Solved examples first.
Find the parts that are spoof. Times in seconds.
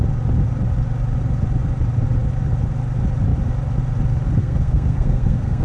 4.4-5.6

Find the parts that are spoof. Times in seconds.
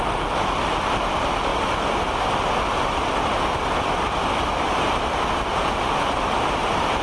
none